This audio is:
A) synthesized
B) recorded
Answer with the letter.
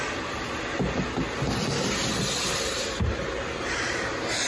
B